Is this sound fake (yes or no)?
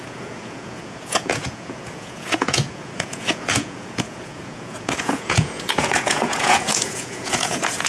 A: yes